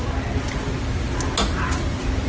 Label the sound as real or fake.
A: real